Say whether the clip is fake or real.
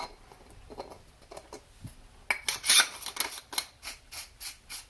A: real